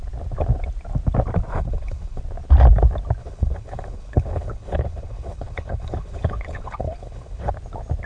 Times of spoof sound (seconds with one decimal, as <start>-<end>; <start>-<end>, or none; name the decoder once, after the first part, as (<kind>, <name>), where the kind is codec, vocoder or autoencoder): 1.5-2.2 (codec, HILCodec); 3.2-7.5